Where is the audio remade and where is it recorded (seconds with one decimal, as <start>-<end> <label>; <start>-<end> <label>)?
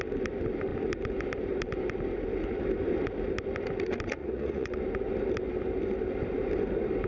0.0-4.2 recorded; 4.2-4.8 remade; 4.8-7.1 recorded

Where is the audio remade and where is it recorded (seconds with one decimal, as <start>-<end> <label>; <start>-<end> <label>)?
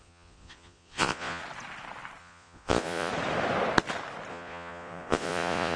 0.0-1.4 remade; 1.4-2.2 recorded; 2.2-3.1 remade; 3.1-4.3 recorded; 4.3-5.8 remade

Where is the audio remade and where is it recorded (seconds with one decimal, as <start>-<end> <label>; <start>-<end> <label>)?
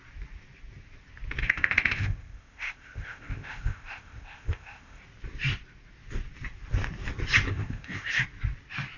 0.0-1.4 recorded; 1.4-5.0 remade; 5.0-7.5 recorded; 7.5-8.2 remade; 8.2-9.0 recorded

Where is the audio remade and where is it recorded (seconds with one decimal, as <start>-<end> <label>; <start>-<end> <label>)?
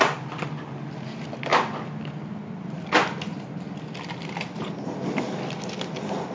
0.0-6.3 recorded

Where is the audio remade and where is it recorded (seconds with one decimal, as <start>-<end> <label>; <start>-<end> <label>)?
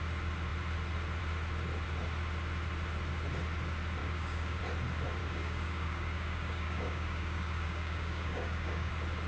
0.0-4.0 recorded; 4.0-4.6 remade; 4.6-5.2 recorded; 5.2-8.9 remade; 8.9-9.3 recorded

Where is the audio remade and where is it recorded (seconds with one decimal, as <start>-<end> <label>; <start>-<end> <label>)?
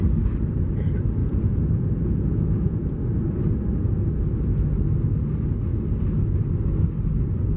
0.0-1.2 recorded; 1.2-2.9 remade; 2.9-7.6 recorded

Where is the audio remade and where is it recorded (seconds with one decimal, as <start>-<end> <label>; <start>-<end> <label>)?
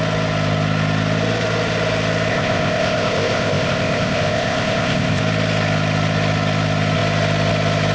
0.0-2.3 recorded; 2.3-5.2 remade; 5.2-7.9 recorded